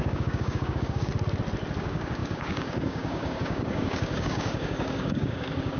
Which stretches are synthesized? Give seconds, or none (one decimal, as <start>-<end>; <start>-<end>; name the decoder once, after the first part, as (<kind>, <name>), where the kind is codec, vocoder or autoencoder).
0.0-1.1 (codec, DAC); 1.8-5.8